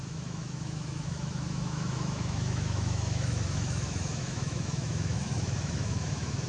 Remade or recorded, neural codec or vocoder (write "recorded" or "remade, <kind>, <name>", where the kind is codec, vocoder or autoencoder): remade, autoencoder, DAC-VAE